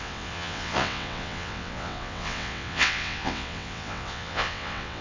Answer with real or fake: fake